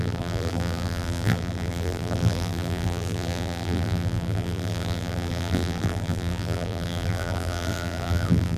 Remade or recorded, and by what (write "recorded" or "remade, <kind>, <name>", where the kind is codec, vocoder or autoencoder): remade, vocoder, BigVGAN v2